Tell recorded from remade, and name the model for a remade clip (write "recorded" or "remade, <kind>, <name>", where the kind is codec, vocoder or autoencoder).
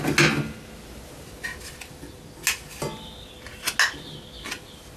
recorded